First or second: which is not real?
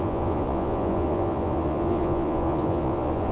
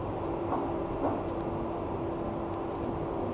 first